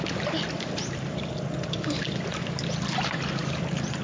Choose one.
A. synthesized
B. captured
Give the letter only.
B